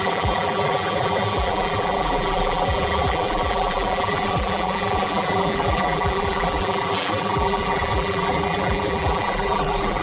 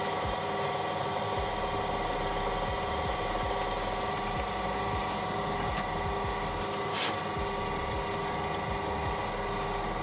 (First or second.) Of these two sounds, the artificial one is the first